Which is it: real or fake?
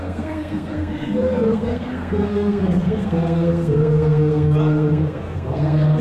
fake